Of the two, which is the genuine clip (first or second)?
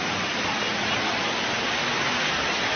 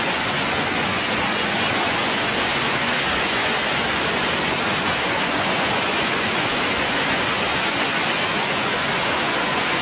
first